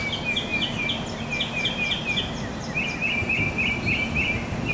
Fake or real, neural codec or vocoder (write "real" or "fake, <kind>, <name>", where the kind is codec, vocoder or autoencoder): real